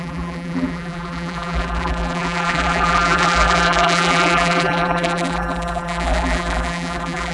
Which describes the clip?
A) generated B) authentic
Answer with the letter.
A